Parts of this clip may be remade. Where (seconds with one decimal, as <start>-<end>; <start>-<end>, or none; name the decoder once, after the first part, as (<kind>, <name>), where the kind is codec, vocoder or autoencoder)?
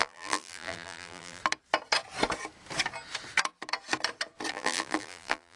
0.0-1.4 (vocoder, BigVGAN v2); 4.5-5.6